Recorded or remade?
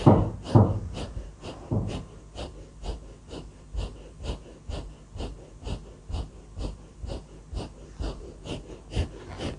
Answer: recorded